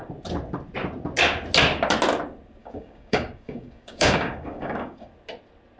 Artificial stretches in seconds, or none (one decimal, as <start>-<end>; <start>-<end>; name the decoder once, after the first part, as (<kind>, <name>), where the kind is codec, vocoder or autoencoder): 2.6-5.1 (codec, DAC)